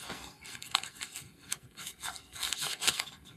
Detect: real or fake fake